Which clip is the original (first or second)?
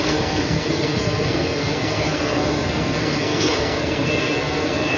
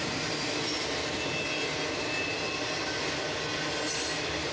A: second